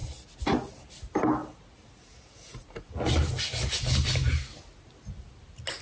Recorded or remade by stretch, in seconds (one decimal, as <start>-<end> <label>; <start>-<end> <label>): 0.0-5.8 recorded

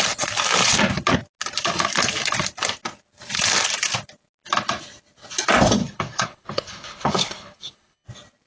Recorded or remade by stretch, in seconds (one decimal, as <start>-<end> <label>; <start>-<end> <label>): 0.0-5.8 recorded; 5.8-8.1 remade; 8.1-8.5 recorded

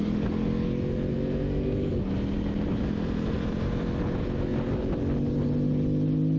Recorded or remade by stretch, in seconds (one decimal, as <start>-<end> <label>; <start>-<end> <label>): 0.0-1.1 recorded; 1.1-2.1 remade; 2.1-6.4 recorded